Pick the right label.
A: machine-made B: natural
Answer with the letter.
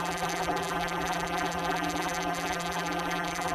A